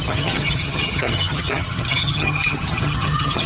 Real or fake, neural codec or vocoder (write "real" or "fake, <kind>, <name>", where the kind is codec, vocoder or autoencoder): fake, vocoder, HiFi-GAN